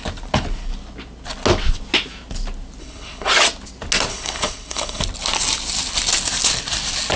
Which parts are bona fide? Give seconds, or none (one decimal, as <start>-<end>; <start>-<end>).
0.0-2.8; 3.3-4.1; 5.0-7.2